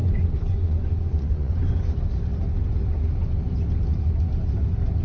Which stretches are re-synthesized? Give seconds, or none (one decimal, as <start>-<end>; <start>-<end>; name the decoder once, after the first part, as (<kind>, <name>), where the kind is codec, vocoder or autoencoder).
0.0-1.7 (vocoder, Vocos)